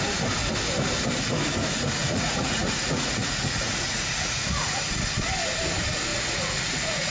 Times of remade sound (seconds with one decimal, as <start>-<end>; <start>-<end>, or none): 2.0-4.8; 6.1-7.1